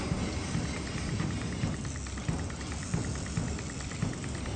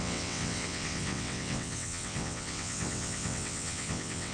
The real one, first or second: first